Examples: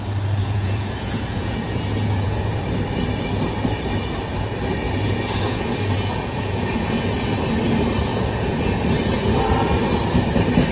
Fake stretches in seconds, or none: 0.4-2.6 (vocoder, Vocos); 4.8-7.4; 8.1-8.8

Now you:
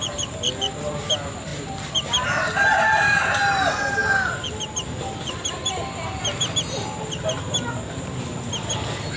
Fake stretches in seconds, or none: none